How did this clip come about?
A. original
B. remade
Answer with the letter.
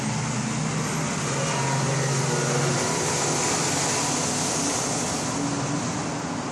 A